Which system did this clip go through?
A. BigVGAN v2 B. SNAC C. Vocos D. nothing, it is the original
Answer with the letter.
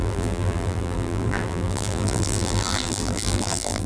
A